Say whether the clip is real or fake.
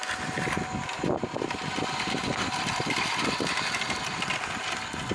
real